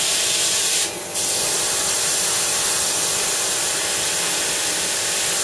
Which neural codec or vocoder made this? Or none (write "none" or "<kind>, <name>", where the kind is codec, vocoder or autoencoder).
none